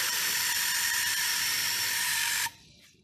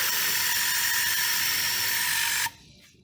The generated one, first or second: first